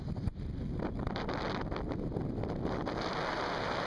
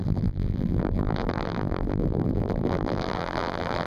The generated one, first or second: second